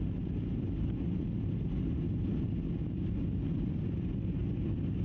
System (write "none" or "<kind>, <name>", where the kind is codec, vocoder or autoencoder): none